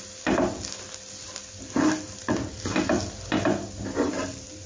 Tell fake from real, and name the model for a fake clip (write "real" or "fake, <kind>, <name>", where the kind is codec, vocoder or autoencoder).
real